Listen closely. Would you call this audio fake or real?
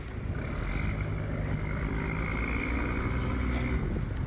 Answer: real